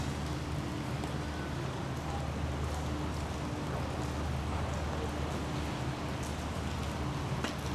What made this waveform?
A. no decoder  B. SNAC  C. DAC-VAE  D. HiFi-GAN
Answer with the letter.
A